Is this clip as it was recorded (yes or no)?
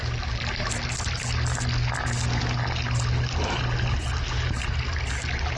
yes